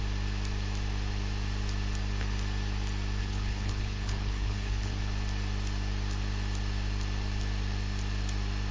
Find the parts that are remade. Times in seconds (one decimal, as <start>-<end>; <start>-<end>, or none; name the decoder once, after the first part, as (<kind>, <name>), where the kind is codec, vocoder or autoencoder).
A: 3.2-5.0 (codec, HILCodec)